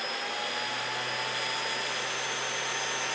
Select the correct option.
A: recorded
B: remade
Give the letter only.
A